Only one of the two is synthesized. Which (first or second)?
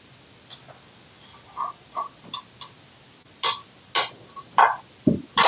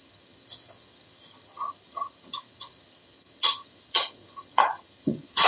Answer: second